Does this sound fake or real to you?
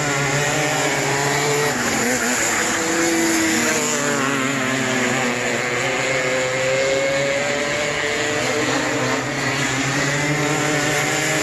real